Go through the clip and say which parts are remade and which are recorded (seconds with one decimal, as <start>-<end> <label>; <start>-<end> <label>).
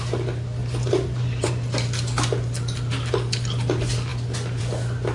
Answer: 0.0-0.6 recorded; 0.6-1.5 remade; 1.5-5.1 recorded